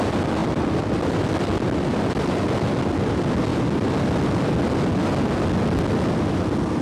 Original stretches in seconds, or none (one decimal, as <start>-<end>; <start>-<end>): 0.0-0.4; 1.3-6.8